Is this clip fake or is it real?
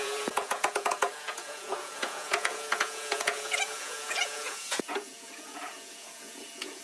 fake